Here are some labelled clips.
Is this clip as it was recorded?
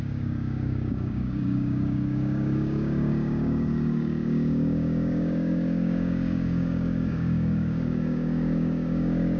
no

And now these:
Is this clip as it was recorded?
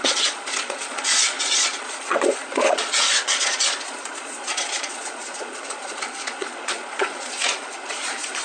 no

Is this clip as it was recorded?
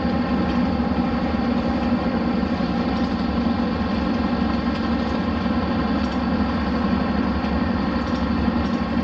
yes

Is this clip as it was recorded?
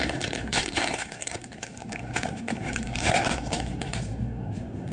no